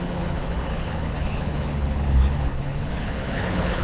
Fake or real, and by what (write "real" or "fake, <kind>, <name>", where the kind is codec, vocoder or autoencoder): fake, codec, HILCodec